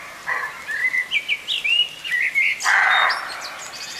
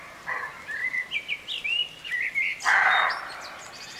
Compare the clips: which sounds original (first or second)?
first